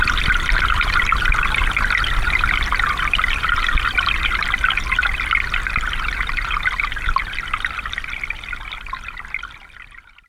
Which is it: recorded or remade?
recorded